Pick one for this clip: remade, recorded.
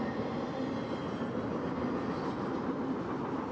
recorded